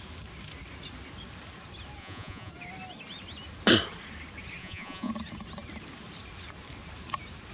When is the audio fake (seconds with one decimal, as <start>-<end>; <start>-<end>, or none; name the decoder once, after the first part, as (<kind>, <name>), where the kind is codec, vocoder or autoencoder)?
2.0-2.5 (vocoder, Vocos); 4.6-5.1